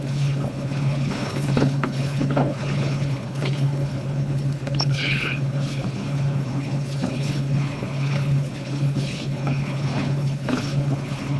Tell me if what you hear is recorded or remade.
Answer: remade